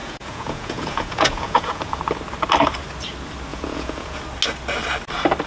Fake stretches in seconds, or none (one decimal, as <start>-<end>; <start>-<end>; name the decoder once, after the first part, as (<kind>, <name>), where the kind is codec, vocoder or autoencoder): 0.0-2.0 (vocoder, Vocos); 3.5-4.2